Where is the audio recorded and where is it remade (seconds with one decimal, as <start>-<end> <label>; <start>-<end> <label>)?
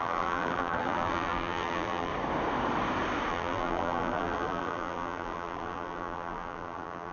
0.0-2.1 remade; 2.1-3.3 recorded; 3.3-7.1 remade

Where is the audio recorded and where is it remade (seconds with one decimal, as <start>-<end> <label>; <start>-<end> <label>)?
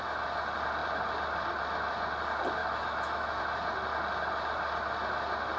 0.0-2.6 recorded; 2.6-3.4 remade; 3.4-5.6 recorded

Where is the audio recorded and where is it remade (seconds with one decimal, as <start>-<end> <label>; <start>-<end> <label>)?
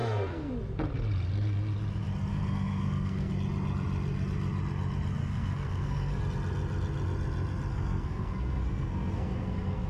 0.0-0.5 remade; 0.5-2.3 recorded; 2.3-3.3 remade; 3.3-5.2 recorded; 5.2-6.2 remade; 6.2-7.7 recorded; 7.7-9.9 remade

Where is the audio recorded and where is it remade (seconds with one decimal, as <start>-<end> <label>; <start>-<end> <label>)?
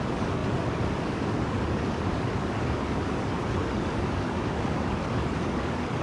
0.0-6.0 remade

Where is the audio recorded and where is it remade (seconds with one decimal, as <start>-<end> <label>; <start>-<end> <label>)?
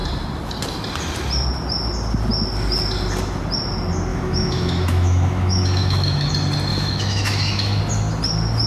0.0-4.1 recorded; 4.1-6.3 remade; 6.3-6.7 recorded; 6.7-7.8 remade; 7.8-8.7 recorded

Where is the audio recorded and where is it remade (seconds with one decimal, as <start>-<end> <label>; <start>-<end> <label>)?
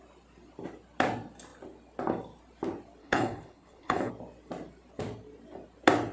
0.0-3.0 recorded; 3.0-4.1 remade; 4.1-6.1 recorded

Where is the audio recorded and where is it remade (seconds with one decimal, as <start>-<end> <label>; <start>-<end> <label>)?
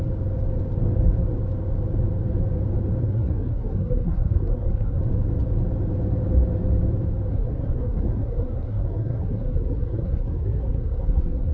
0.0-3.0 recorded; 3.0-5.0 remade; 5.0-7.3 recorded; 7.3-11.5 remade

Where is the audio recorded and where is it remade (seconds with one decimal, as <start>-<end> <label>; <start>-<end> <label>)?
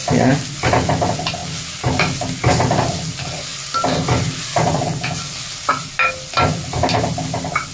0.0-7.7 recorded